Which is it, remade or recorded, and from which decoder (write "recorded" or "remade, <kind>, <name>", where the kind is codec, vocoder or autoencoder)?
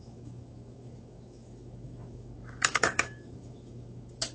remade, autoencoder, DAC-VAE